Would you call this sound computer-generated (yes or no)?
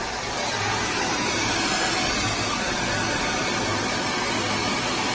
no